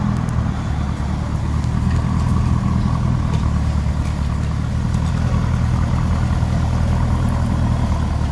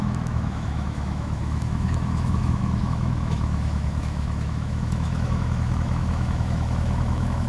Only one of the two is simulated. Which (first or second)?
second